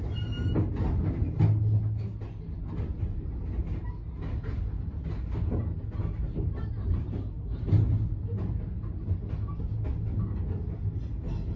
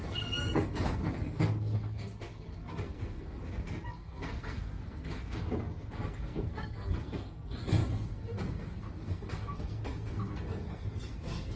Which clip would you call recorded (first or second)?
first